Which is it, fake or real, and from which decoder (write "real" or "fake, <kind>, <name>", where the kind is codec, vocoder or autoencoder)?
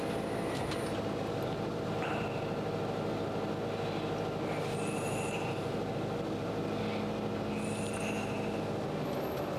real